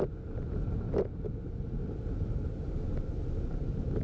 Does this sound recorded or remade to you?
recorded